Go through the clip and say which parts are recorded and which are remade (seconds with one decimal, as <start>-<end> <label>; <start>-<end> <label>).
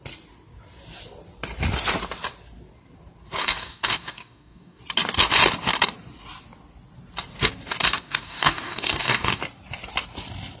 0.0-3.4 recorded; 3.4-4.8 remade; 4.8-7.8 recorded; 7.8-9.4 remade; 9.4-10.6 recorded